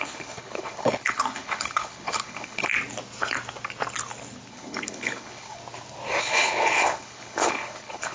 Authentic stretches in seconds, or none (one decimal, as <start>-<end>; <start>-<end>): 2.7-4.5; 5.6-6.2